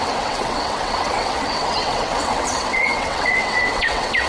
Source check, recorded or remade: remade